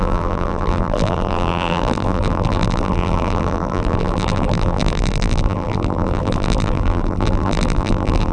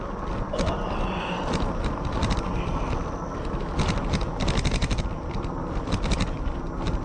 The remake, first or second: first